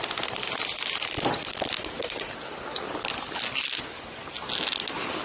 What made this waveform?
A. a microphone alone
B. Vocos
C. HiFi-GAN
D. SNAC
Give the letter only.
A